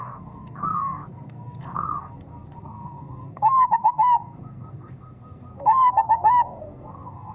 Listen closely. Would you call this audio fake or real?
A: fake